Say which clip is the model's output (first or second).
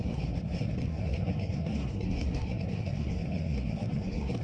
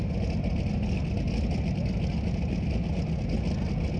first